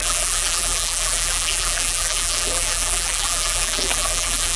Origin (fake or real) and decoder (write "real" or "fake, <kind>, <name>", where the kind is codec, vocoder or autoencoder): fake, vocoder, BigVGAN v2